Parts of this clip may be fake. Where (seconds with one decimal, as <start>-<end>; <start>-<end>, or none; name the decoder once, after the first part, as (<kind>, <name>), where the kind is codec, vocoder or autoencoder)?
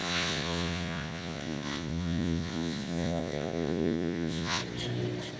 0.0-4.6 (vocoder, Vocos)